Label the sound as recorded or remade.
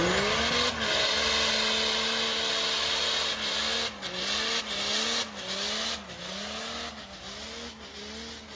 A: recorded